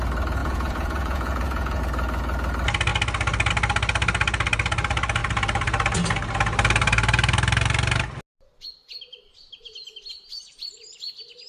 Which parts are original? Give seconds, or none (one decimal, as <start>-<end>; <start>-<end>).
0.0-0.4; 1.8-11.5